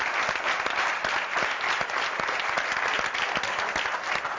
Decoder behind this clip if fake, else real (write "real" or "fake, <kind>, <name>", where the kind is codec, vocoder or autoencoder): real